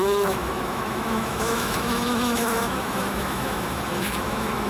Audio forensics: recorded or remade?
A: remade